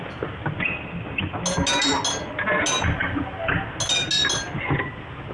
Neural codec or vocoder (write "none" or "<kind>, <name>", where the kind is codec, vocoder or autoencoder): none